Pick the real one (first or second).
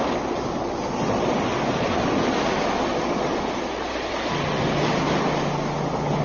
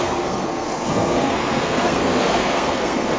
first